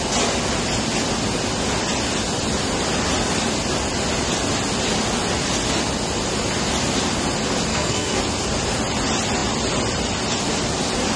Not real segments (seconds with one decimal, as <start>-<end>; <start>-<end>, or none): 7.7-8.2